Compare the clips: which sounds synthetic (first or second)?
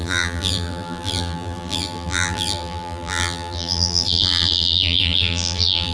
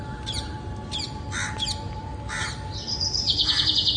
first